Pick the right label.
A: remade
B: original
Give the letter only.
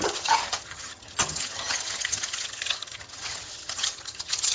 A